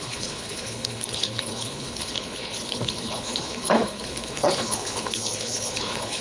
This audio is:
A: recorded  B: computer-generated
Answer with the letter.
B